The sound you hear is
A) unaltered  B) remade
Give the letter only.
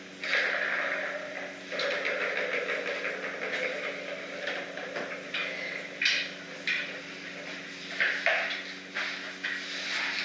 A